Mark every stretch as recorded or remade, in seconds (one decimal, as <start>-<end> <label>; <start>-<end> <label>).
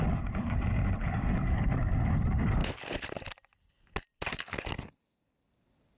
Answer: 0.0-1.0 recorded; 1.0-1.7 remade; 1.7-6.0 recorded